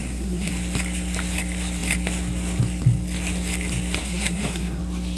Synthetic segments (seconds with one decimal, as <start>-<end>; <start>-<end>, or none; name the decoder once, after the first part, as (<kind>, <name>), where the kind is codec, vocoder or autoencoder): 0.0-0.5 (codec, SNAC); 4.0-4.8